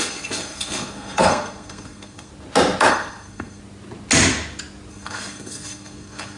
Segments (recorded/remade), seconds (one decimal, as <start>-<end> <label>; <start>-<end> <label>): 0.0-2.3 remade; 2.3-2.9 recorded; 2.9-3.6 remade; 3.6-4.9 recorded; 4.9-6.4 remade